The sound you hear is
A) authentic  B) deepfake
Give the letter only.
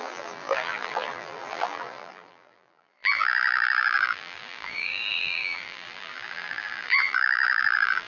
B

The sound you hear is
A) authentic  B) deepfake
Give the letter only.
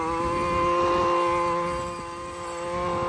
A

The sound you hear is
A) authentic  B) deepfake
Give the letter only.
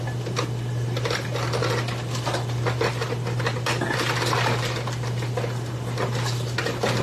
A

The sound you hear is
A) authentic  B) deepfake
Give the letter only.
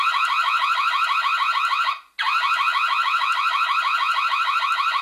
A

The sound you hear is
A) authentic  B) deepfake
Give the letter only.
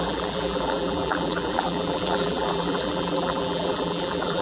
B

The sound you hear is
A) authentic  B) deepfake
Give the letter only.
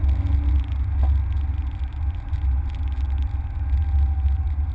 A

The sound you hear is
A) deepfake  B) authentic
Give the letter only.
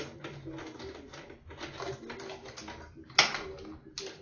B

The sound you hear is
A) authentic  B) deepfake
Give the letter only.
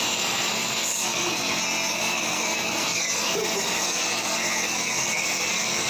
B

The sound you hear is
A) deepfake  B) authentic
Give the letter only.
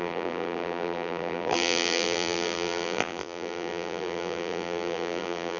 A